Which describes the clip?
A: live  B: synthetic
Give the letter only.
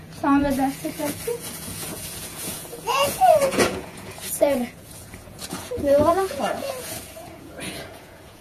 B